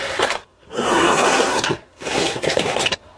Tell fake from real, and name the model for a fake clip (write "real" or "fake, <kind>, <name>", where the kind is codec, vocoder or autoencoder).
fake, codec, SNAC